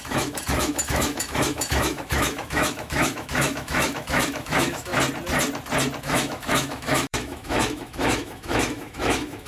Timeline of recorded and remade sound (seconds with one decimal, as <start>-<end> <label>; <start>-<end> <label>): 0.0-4.9 remade; 4.9-6.0 recorded; 6.0-9.5 remade